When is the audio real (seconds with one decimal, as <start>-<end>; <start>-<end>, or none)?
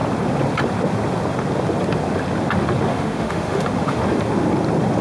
0.0-2.9; 4.0-5.0